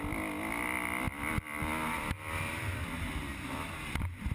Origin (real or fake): real